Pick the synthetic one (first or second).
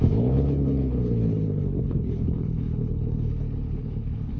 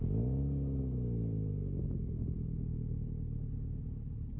first